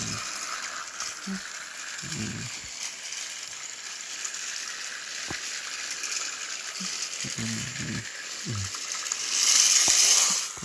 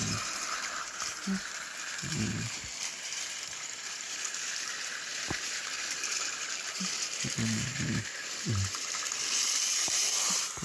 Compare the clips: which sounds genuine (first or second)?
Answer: first